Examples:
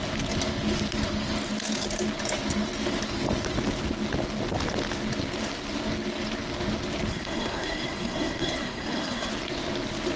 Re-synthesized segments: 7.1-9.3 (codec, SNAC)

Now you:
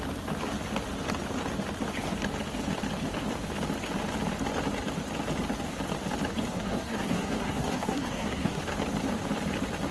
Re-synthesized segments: 6.5-8.6 (codec, SNAC)

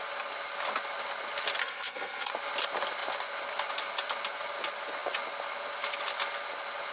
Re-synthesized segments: 1.6-2.3 (codec, SNAC)

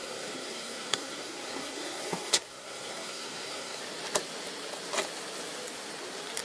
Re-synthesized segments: 0.0-3.8 (codec, SNAC)

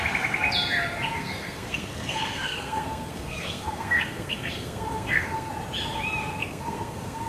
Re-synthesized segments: 1.1-5.5 (codec, SNAC); 6.4-7.3

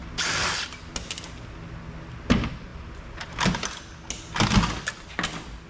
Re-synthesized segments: none

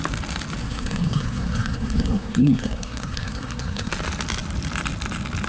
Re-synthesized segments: 0.6-3.9 (codec, SNAC)

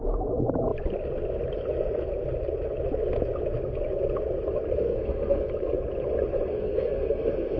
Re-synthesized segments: 4.8-5.5 (codec, SNAC); 6.5-7.6